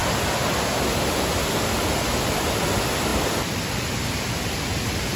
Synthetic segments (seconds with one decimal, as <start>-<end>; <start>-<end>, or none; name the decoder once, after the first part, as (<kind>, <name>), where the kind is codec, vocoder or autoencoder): none